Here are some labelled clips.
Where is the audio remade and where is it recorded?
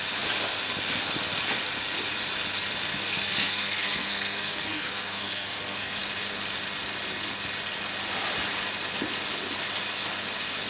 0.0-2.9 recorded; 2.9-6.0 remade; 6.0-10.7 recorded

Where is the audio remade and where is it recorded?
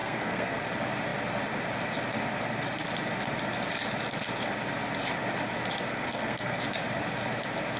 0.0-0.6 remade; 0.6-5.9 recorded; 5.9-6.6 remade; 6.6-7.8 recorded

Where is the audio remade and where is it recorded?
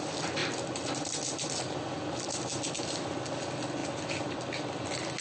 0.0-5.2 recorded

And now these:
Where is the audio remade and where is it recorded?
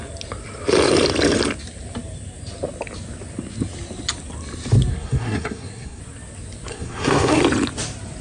0.0-4.9 recorded; 4.9-6.0 remade; 6.0-6.7 recorded; 6.7-7.4 remade; 7.4-8.2 recorded